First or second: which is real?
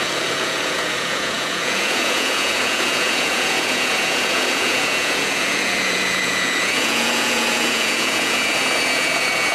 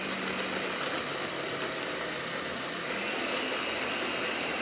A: second